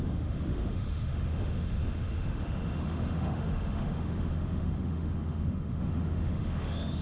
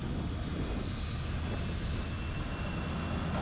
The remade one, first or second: first